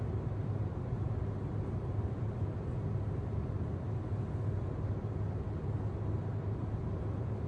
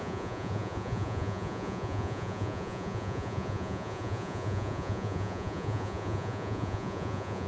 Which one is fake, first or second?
second